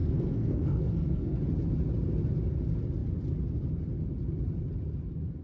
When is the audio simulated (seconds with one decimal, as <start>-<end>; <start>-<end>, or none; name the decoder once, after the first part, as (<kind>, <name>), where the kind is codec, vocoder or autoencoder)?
0.0-1.4 (codec, SNAC)